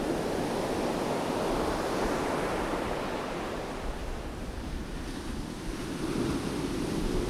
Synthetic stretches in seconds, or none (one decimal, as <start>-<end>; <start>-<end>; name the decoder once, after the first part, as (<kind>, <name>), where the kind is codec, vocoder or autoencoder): none